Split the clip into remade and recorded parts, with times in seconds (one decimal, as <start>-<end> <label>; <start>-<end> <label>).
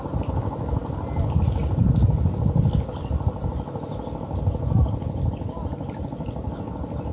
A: 0.0-7.1 recorded